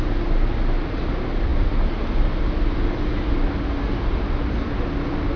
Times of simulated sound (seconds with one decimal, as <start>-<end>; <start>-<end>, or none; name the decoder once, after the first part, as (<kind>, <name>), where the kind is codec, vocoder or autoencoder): none